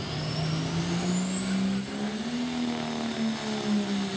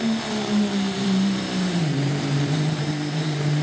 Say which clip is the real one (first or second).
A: first